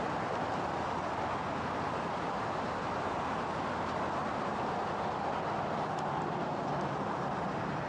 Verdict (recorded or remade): recorded